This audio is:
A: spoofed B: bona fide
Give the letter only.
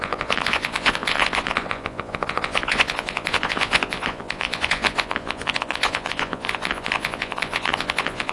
A